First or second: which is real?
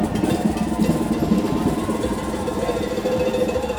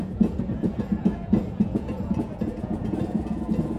first